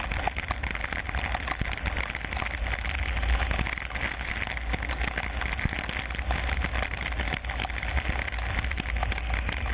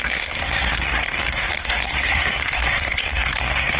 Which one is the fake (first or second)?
second